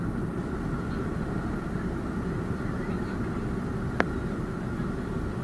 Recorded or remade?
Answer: remade